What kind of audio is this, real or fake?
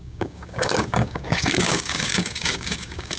fake